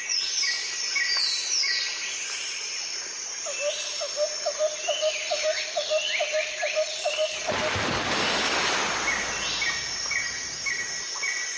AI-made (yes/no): no